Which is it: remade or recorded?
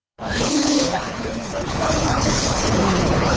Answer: remade